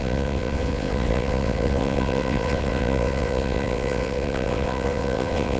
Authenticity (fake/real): fake